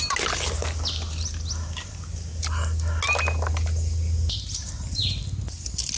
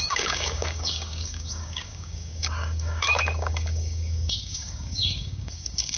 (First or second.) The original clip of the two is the first